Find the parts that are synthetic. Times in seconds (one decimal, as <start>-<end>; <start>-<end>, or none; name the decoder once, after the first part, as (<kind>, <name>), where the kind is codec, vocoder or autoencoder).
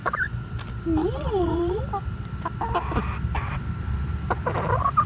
1.0-1.8 (vocoder, WaveNeXt)